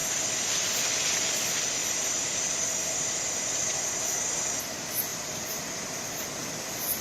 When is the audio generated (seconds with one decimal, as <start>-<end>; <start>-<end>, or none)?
0.0-0.6; 1.8-2.3; 5.1-7.0